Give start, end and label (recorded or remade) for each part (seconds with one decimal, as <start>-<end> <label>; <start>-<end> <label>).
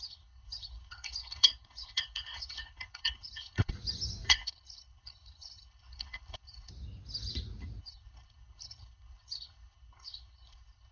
0.0-3.7 remade; 3.7-4.3 recorded; 4.3-6.7 remade; 6.7-7.8 recorded; 7.8-10.9 remade